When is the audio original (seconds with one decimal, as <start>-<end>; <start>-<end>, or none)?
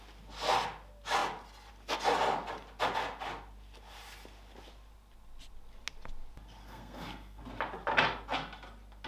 0.0-6.6; 7.4-9.1